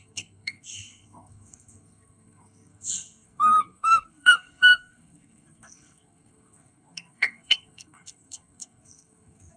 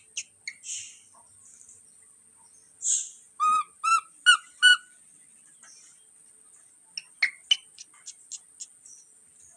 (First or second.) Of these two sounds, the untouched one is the second